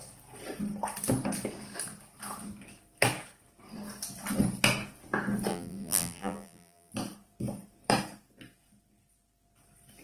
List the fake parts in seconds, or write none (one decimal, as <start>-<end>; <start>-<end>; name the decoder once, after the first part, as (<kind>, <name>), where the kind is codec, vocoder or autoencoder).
5.5-6.9 (vocoder, BigVGAN v2)